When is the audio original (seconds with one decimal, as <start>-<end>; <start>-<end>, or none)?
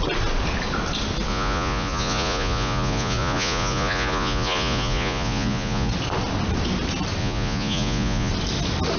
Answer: 0.0-1.3; 5.9-7.2; 8.3-9.0